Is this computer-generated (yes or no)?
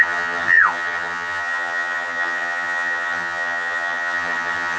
yes